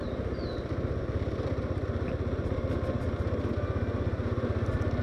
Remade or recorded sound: recorded